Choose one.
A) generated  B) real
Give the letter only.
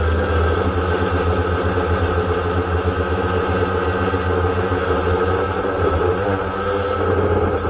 B